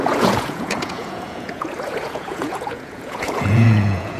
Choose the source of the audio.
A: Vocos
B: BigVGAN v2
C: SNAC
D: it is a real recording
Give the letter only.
A